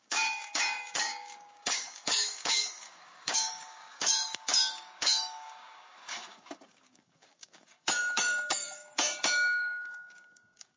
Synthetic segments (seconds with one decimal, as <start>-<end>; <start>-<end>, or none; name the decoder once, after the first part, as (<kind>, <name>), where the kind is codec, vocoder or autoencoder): 0.0-10.8 (codec, DAC)